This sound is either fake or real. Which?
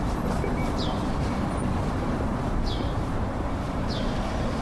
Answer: fake